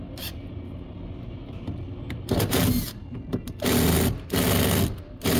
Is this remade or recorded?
recorded